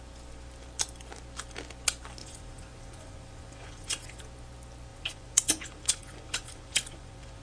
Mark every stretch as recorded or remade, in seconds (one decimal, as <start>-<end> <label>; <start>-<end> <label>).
0.0-2.2 recorded; 2.2-4.2 remade; 4.2-4.9 recorded; 4.9-7.4 remade